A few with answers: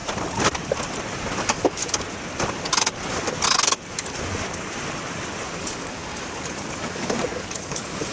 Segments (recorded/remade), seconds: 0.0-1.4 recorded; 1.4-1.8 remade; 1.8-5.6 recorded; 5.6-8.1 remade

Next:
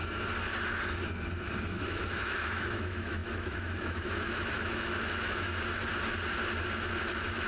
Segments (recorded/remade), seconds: 0.0-1.6 recorded; 1.6-5.5 remade; 5.5-7.0 recorded; 7.0-7.5 remade

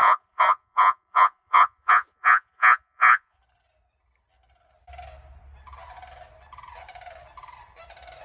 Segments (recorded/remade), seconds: 0.0-3.4 remade; 3.4-8.2 recorded

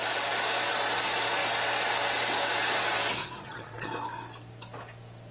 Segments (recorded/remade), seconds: 0.0-3.2 recorded; 3.2-3.9 remade; 3.9-5.3 recorded